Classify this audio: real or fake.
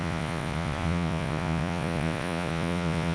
fake